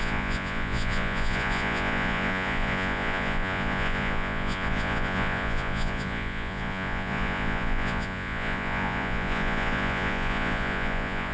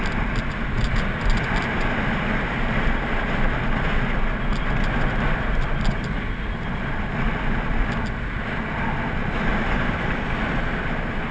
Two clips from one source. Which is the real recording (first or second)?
second